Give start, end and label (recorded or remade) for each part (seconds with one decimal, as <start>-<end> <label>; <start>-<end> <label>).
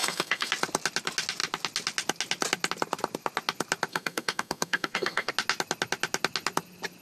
0.0-0.5 remade; 0.5-3.9 recorded; 3.9-5.3 remade; 5.3-7.0 recorded